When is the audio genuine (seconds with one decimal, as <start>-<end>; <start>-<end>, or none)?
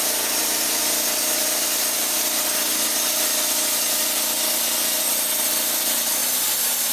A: 0.0-6.9